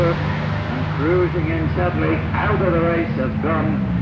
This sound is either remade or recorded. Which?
recorded